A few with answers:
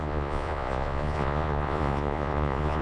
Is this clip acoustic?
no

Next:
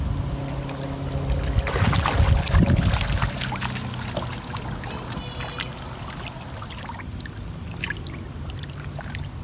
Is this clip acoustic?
yes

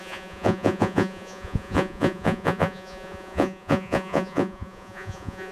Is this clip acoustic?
no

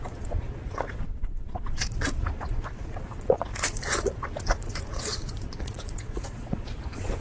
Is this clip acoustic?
no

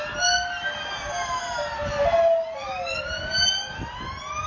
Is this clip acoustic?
yes